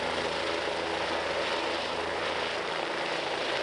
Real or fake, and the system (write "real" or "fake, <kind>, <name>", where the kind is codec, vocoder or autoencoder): real